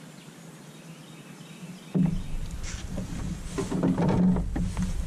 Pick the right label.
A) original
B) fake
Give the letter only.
A